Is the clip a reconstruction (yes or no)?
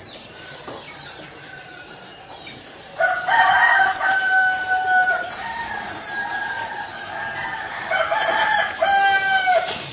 yes